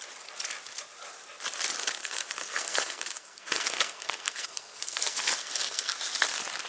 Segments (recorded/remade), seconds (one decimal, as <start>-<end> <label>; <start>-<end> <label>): 0.0-2.0 recorded; 2.0-6.0 remade; 6.0-6.7 recorded